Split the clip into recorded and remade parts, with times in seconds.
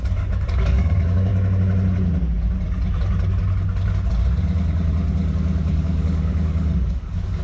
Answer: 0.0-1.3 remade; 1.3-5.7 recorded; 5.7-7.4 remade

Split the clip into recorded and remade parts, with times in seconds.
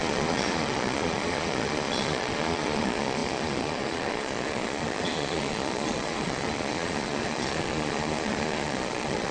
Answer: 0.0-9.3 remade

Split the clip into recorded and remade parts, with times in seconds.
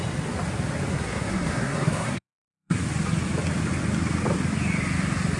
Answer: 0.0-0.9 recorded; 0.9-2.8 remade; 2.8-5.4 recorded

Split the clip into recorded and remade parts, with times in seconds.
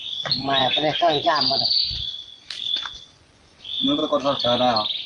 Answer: 0.0-4.0 remade; 4.0-5.1 recorded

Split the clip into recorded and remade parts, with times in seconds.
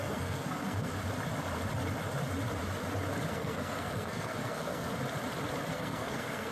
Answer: 0.0-0.9 remade; 0.9-3.3 recorded; 3.3-4.9 remade; 4.9-5.7 recorded; 5.7-6.5 remade